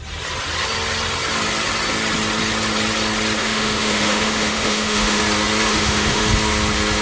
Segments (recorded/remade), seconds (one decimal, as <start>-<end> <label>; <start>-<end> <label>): 0.0-3.4 recorded; 3.4-5.2 remade; 5.2-5.7 recorded; 5.7-6.2 remade; 6.2-7.0 recorded